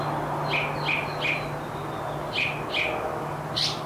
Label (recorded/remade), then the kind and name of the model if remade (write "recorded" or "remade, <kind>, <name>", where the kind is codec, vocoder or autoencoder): recorded